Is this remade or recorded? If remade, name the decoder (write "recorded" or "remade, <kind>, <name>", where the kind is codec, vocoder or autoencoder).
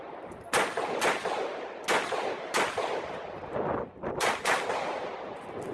remade, vocoder, BigVGAN v2